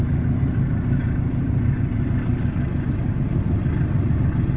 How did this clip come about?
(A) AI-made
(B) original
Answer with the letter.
B